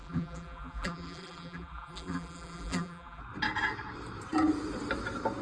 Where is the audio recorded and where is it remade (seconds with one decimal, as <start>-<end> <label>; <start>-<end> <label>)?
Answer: 0.0-3.2 remade; 3.2-5.4 recorded